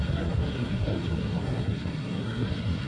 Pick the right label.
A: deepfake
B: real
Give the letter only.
A